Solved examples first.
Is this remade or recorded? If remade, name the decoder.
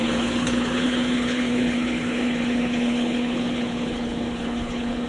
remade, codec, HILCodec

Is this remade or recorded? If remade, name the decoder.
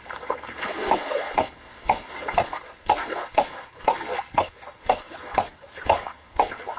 remade, codec, SNAC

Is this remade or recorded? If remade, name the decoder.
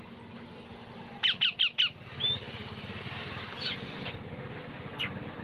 recorded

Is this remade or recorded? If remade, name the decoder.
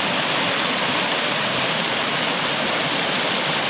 recorded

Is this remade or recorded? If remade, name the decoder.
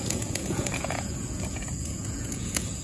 remade, vocoder, Vocos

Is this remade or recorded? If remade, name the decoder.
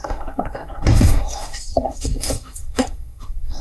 remade, codec, SNAC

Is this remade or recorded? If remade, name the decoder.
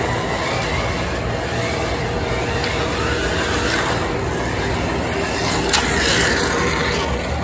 recorded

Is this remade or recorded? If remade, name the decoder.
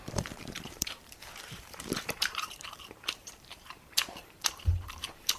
remade, vocoder, BigVGAN v2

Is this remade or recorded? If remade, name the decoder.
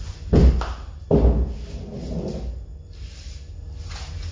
recorded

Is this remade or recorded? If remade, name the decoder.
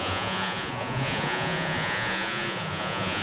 remade, vocoder, Vocos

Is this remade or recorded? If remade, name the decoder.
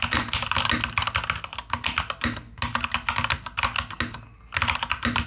recorded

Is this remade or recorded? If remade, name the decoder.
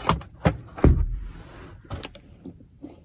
recorded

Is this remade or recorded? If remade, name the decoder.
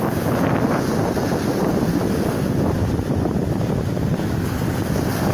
remade, vocoder, BigVGAN v2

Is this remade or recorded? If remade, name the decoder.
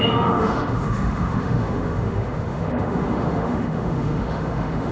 remade, autoencoder, DAC-VAE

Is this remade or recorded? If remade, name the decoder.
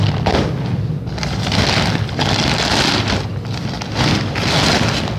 recorded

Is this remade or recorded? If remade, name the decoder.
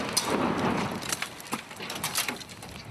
recorded